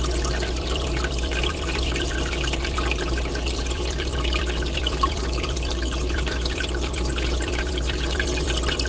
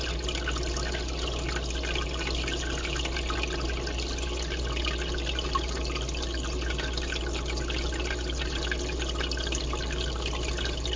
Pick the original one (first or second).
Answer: second